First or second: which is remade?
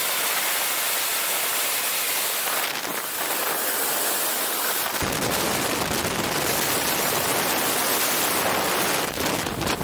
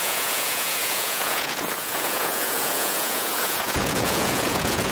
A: second